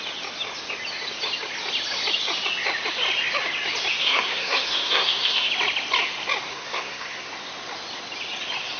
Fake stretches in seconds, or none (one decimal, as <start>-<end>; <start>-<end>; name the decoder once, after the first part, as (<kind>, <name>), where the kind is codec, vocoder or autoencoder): 4.0-5.5 (codec, SNAC); 6.5-7.2